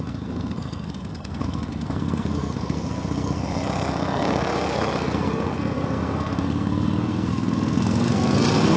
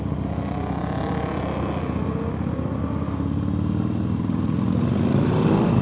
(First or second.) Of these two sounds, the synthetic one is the first